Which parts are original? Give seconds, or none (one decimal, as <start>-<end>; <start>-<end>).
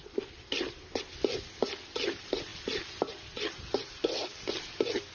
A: 0.0-5.1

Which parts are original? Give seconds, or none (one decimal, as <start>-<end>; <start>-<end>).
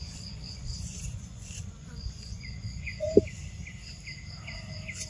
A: 3.1-5.1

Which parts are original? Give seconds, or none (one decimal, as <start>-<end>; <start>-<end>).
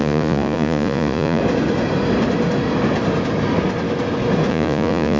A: 1.4-4.5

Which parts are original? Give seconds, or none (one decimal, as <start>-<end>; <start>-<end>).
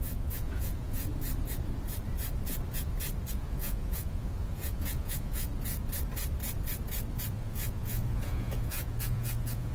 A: 1.1-3.3; 5.5-7.3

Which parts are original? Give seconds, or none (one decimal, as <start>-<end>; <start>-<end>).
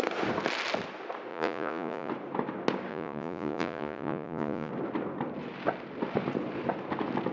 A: 0.0-1.3; 2.1-2.9; 4.7-7.3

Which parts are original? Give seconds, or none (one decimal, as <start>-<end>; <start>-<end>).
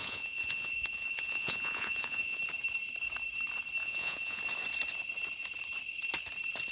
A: 2.4-3.8; 4.4-6.7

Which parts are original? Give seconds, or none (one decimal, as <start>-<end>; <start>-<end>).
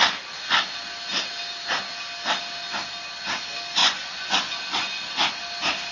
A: 0.0-3.8; 5.1-5.9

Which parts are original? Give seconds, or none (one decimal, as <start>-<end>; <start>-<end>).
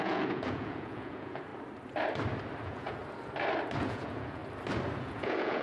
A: 1.5-2.6; 3.0-3.8; 4.4-5.0